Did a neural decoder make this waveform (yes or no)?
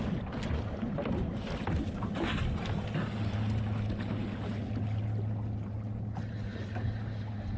no